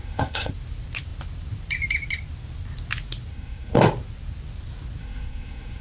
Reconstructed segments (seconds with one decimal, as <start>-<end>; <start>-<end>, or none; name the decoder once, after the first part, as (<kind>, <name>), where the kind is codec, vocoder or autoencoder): 0.0-0.5 (codec, SNAC); 3.3-3.8; 5.0-5.8